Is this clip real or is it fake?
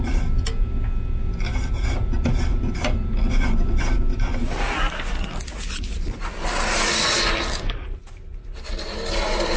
real